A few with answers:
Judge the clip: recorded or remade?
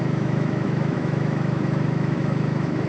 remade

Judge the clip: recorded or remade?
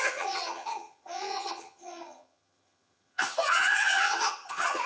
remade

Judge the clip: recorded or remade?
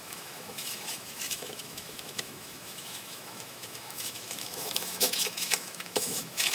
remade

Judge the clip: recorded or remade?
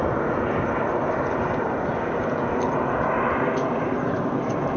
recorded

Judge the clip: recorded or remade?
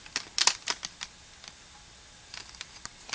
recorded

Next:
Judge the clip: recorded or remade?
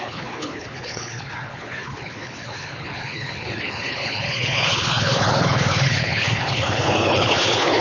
remade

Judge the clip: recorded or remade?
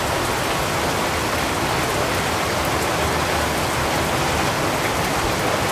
recorded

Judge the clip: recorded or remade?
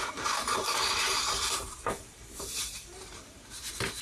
remade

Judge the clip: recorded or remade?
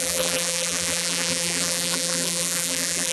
remade